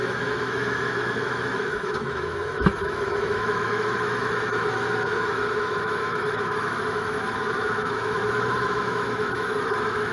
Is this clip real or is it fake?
fake